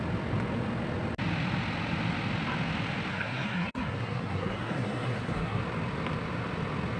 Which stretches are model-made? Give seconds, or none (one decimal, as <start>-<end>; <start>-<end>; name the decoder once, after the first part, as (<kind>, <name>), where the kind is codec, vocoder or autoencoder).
3.1-5.6 (codec, SNAC)